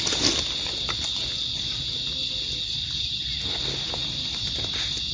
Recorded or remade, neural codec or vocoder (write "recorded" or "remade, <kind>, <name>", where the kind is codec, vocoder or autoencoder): recorded